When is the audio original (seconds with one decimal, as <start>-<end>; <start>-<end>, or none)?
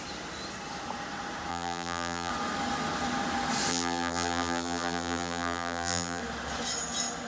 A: 0.0-1.5; 2.3-3.7; 6.2-7.3